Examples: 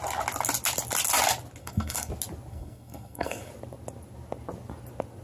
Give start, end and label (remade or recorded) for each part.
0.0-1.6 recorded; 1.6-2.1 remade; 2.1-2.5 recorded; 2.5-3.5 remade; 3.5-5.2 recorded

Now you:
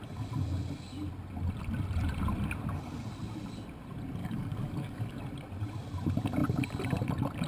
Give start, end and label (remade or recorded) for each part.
0.0-4.2 recorded; 4.2-5.2 remade; 5.2-7.5 recorded

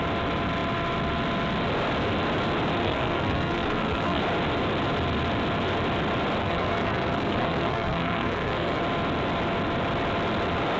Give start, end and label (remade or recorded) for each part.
0.0-2.8 recorded; 2.8-4.2 remade; 4.2-6.4 recorded; 6.4-8.8 remade; 8.8-10.8 recorded

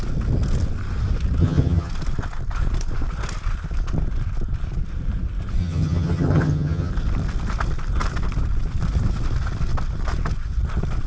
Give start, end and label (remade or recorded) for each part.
0.0-1.4 recorded; 1.4-1.9 remade; 1.9-5.6 recorded; 5.6-6.9 remade; 6.9-11.1 recorded

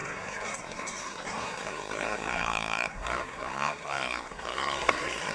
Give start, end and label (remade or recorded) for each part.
0.0-5.3 remade